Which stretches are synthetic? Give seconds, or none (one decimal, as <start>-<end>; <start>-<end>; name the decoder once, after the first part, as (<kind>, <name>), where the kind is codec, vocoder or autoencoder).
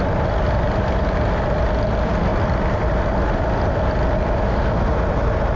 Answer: none